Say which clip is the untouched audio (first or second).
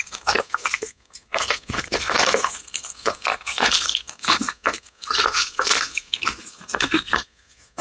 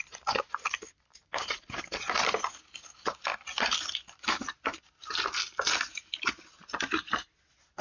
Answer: second